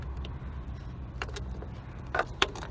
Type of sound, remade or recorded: remade